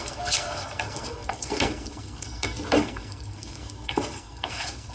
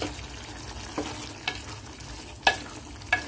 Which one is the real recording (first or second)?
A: second